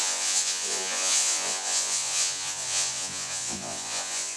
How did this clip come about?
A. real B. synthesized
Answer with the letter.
B